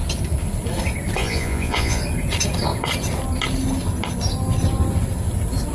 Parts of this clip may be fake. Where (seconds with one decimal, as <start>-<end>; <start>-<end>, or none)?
1.2-2.0